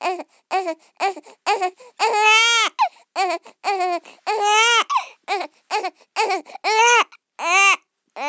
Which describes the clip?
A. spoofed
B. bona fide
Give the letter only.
B